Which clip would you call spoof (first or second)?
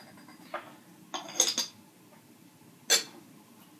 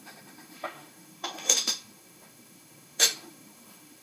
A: second